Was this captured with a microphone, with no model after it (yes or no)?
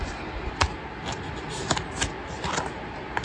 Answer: yes